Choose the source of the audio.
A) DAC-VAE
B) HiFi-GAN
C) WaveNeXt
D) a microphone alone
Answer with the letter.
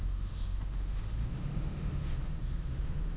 A